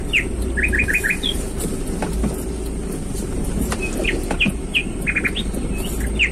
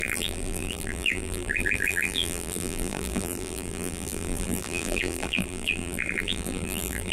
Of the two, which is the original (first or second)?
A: first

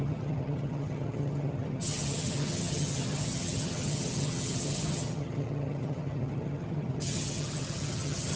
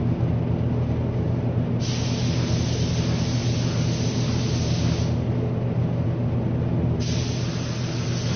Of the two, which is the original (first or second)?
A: second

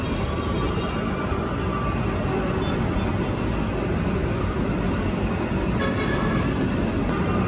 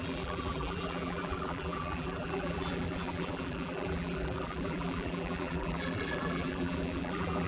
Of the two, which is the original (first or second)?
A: first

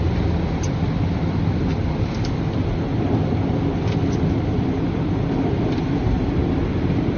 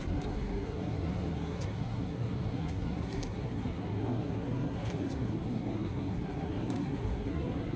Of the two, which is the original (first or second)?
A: first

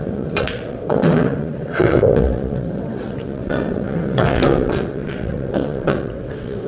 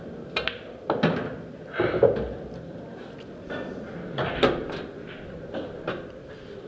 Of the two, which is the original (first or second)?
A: second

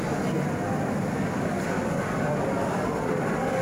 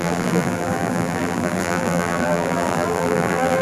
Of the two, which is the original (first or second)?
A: first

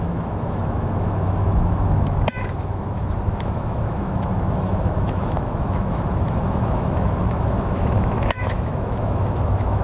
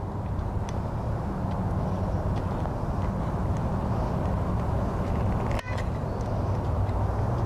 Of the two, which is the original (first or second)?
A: second